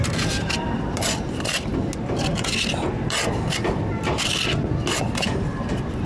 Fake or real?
real